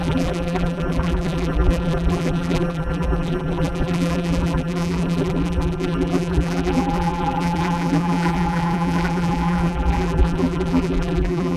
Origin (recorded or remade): remade